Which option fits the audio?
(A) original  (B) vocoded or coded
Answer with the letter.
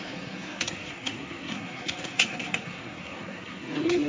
B